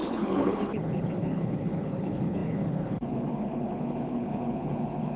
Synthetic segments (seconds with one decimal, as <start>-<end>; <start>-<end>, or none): 0.0-5.2